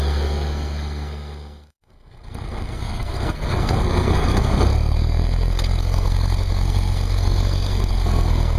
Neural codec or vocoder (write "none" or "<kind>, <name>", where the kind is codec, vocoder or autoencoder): codec, SNAC